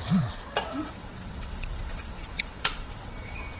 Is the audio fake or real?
fake